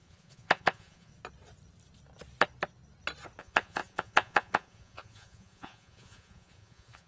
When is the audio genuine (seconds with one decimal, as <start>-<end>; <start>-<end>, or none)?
1.1-3.4